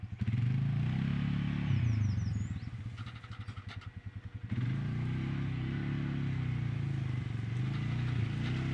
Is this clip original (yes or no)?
yes